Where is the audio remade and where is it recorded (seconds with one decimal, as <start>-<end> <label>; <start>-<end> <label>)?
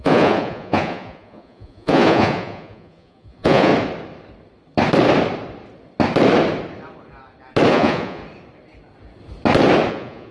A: 0.0-3.7 remade; 3.7-7.7 recorded; 7.7-8.2 remade; 8.2-9.9 recorded; 9.9-10.3 remade